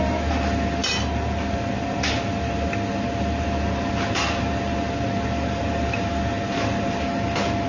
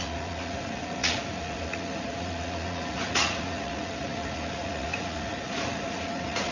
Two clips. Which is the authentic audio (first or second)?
first